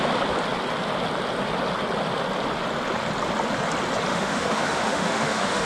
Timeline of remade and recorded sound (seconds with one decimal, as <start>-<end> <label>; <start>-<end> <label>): 0.0-4.1 recorded; 4.1-5.7 remade